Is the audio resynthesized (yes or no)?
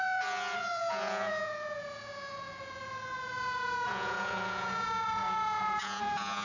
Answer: yes